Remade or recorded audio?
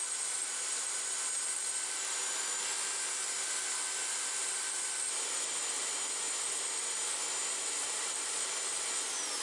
recorded